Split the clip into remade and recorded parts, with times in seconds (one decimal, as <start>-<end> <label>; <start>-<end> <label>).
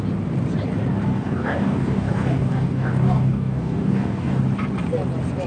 0.0-1.1 recorded; 1.1-4.4 remade; 4.4-5.5 recorded